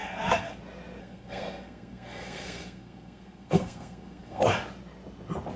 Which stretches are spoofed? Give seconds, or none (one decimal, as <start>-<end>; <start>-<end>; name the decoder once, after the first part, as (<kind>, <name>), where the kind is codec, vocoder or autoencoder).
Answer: 0.0-0.6 (codec, SNAC); 1.0-4.4